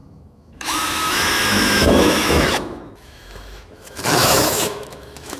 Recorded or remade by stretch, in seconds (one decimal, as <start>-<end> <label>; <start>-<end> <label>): 0.0-5.4 remade